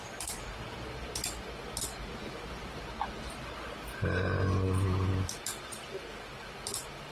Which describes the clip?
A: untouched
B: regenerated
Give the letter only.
A